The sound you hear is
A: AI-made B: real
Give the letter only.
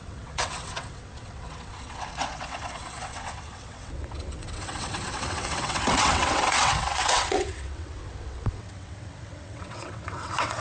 A